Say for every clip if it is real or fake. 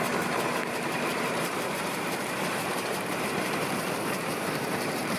fake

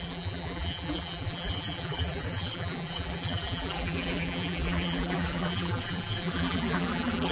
fake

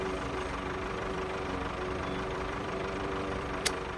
fake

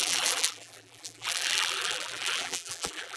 fake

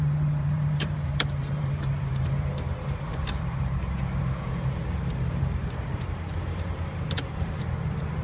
fake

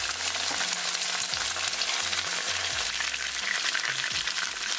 real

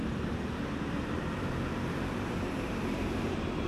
fake